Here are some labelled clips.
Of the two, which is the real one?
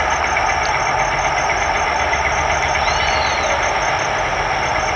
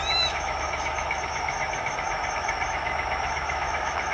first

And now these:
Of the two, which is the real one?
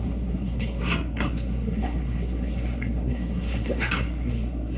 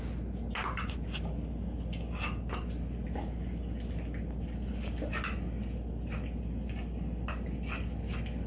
second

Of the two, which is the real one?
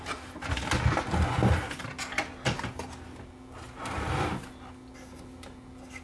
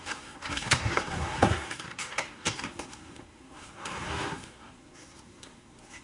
first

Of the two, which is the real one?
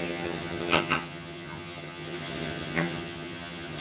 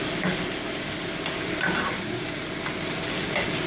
second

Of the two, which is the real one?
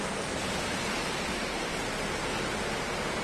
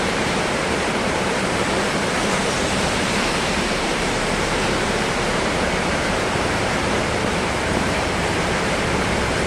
first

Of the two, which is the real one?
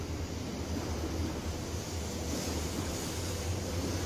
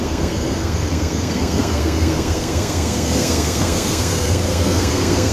first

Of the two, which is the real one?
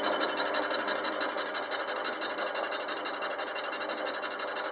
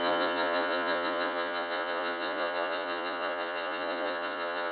first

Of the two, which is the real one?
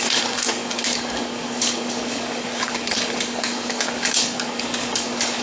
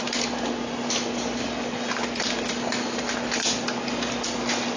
second